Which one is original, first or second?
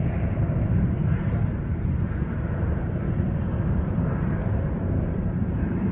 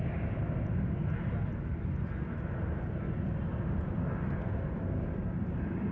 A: second